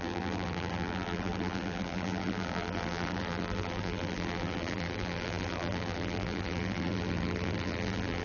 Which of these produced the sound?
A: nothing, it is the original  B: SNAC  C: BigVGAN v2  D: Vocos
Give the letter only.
C